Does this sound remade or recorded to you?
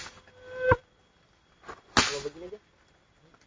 recorded